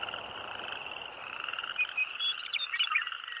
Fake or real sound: real